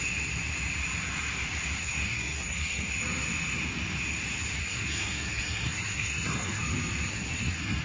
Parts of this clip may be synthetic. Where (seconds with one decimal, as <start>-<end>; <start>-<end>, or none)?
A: 1.8-2.9; 4.6-6.6; 7.1-7.8